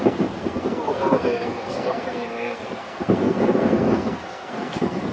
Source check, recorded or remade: remade